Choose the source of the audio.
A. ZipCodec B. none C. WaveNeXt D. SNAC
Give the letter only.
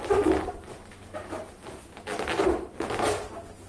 B